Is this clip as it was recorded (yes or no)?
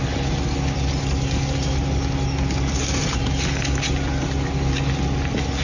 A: yes